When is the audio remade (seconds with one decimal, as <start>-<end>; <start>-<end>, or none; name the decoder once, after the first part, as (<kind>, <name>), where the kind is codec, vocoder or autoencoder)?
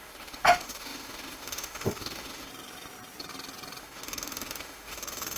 0.0-2.5 (autoencoder, DAC-VAE); 3.8-5.4